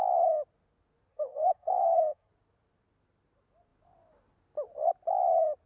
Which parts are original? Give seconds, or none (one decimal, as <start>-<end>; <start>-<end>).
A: 0.0-1.1; 2.3-5.7